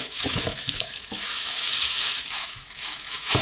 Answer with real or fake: fake